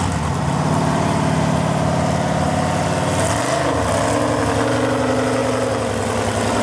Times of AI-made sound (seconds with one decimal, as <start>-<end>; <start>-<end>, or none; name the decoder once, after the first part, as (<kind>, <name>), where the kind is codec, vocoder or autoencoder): none